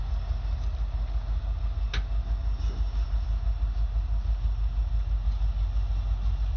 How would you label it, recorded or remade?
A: recorded